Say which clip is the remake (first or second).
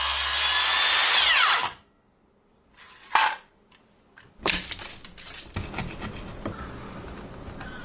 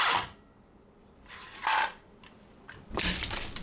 second